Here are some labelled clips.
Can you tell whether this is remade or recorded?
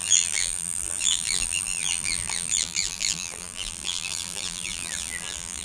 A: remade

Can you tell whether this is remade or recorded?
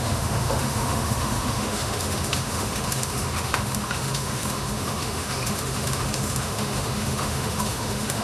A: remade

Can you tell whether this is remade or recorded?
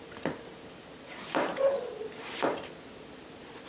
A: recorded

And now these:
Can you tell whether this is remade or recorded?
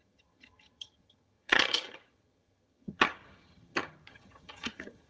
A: remade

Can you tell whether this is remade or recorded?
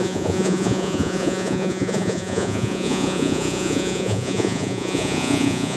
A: remade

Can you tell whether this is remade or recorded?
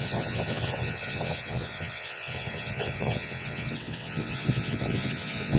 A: remade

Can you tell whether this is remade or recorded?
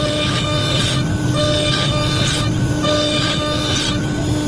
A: recorded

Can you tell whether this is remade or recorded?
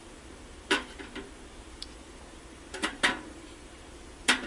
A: remade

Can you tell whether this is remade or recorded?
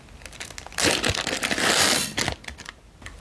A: recorded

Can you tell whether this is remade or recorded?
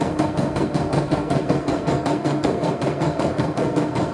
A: remade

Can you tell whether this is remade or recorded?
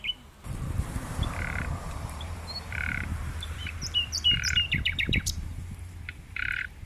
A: remade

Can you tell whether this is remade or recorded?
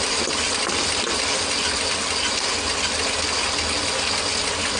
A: recorded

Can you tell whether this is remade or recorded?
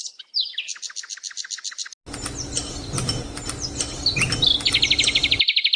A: recorded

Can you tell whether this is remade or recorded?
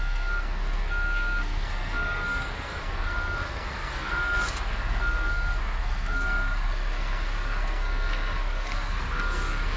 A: remade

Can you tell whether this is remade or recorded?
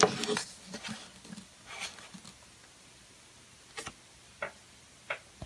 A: recorded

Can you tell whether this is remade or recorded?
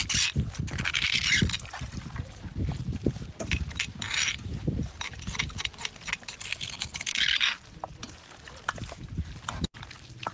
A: recorded